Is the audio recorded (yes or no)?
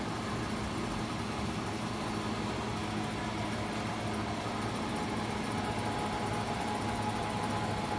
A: yes